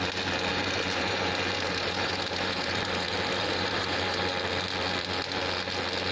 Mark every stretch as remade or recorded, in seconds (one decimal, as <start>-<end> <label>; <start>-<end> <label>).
0.0-0.5 recorded; 0.5-4.2 remade; 4.2-6.1 recorded